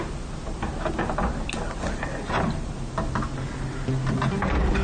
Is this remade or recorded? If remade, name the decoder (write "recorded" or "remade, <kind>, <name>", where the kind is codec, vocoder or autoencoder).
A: recorded